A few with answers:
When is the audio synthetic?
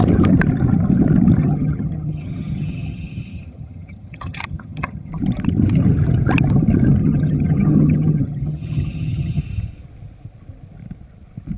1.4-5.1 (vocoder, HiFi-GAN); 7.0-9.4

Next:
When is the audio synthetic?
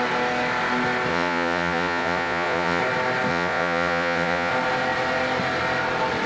1.1-2.8 (vocoder, Vocos); 3.3-4.5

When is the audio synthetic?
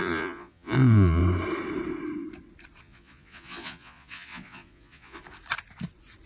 0.0-1.2 (vocoder, Vocos); 2.8-5.2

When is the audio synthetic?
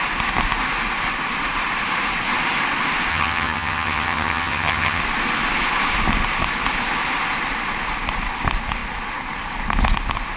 3.1-5.0 (vocoder, HiFi-GAN)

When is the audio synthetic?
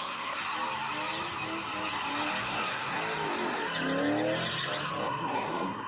0.0-0.4 (codec, SNAC); 2.4-3.0; 5.0-5.9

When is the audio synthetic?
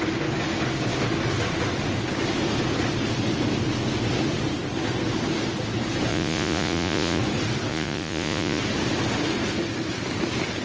6.1-7.2 (vocoder, Vocos); 7.7-8.6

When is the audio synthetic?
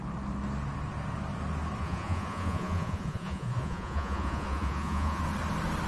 1.8-5.2 (vocoder, Vocos)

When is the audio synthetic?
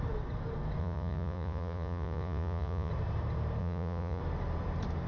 0.8-2.9 (vocoder, Vocos); 3.6-4.2